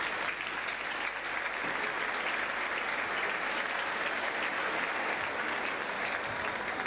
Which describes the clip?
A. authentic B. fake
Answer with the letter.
A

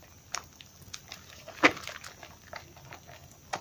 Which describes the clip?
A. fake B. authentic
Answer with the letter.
B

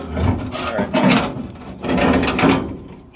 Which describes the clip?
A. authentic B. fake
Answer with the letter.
A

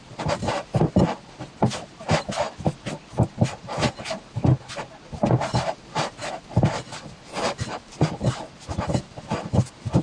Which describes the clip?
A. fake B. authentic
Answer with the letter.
B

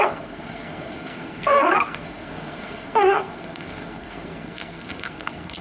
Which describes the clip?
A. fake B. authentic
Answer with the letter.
A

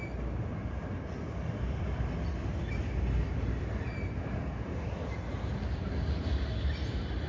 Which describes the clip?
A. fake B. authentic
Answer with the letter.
B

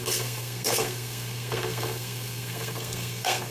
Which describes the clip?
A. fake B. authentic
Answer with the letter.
A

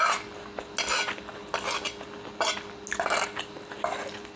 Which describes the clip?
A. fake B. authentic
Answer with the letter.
B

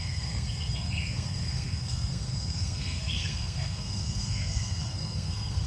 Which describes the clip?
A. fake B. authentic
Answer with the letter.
A